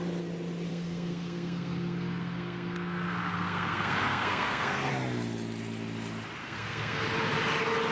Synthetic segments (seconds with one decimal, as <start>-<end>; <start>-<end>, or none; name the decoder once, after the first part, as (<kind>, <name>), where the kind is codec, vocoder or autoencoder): 0.7-4.9 (codec, SNAC); 6.4-7.0